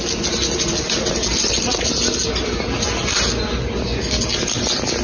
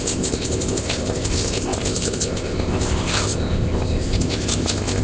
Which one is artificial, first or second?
second